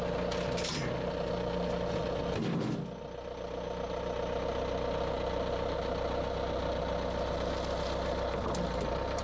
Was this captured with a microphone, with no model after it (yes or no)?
yes